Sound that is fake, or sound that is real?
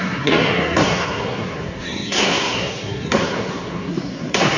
fake